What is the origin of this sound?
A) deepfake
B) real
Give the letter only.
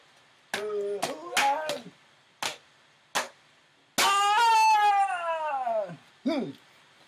B